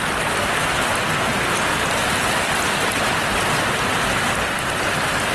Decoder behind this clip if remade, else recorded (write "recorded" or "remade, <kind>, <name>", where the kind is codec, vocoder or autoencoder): recorded